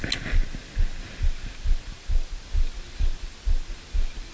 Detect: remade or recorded recorded